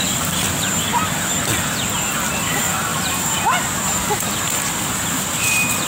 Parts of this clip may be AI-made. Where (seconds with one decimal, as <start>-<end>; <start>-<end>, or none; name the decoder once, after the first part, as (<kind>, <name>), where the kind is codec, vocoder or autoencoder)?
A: 0.0-0.9 (vocoder, BigVGAN v2); 1.4-2.9; 4.8-5.9